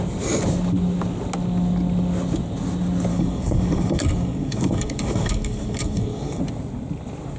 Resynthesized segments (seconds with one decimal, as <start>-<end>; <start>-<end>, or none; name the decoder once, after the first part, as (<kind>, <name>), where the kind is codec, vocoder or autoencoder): 3.1-6.4 (codec, DAC)